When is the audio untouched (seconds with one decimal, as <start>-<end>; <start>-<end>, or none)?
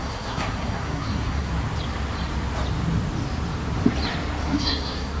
1.5-4.4